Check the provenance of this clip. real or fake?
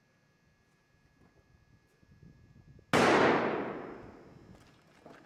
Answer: real